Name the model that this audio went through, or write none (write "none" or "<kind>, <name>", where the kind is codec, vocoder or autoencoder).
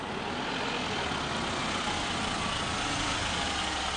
none